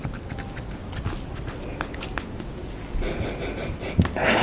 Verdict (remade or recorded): recorded